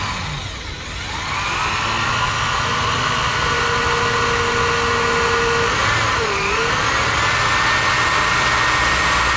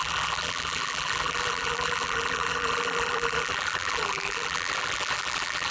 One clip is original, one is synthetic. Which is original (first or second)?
first